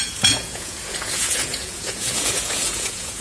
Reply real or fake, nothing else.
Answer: fake